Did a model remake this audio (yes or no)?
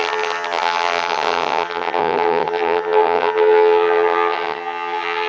yes